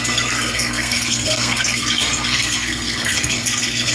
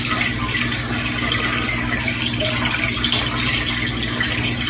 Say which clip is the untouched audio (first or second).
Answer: second